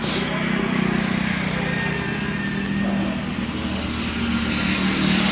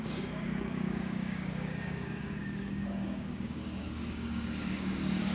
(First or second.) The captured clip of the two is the first